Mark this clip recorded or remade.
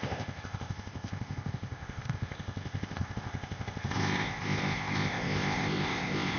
remade